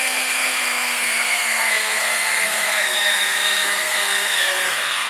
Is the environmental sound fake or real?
fake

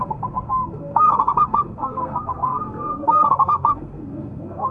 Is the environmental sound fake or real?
fake